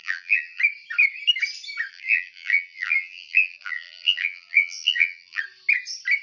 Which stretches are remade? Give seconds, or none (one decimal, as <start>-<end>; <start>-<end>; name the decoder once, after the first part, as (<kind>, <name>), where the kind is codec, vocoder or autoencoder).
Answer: 0.0-0.6 (vocoder, BigVGAN v2); 1.9-5.4

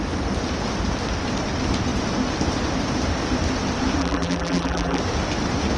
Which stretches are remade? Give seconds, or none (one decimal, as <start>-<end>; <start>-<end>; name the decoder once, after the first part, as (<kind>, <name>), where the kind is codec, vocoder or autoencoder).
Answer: 4.0-5.0 (vocoder, BigVGAN v2)

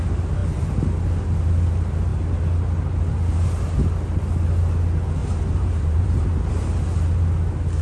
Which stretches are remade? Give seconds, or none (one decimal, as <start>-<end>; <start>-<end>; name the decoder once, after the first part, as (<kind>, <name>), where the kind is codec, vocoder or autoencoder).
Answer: 5.2-6.5 (vocoder, BigVGAN v2)

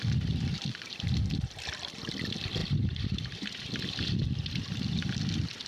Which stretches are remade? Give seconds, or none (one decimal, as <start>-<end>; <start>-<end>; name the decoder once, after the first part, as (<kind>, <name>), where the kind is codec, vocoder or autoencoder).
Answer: none

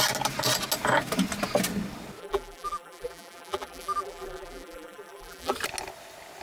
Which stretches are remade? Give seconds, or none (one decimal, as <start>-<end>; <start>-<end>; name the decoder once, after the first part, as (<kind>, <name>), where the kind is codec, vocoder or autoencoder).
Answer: 2.2-5.5 (vocoder, BigVGAN v2)

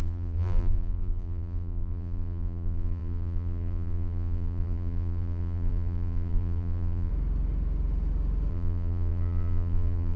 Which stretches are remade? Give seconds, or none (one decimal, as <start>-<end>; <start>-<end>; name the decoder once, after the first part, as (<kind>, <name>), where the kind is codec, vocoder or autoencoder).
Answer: 0.0-7.1 (vocoder, BigVGAN v2); 8.5-10.2